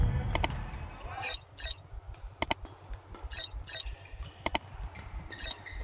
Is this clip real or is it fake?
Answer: real